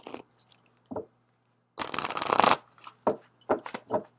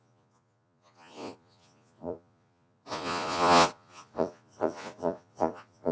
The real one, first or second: first